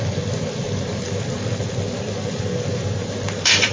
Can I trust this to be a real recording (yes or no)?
yes